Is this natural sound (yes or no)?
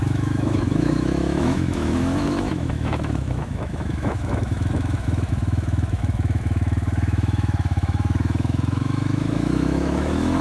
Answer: no